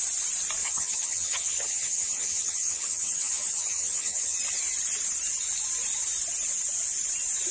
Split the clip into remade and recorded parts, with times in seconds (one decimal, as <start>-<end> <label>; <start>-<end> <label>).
0.0-0.6 recorded; 0.6-4.4 remade; 4.4-7.5 recorded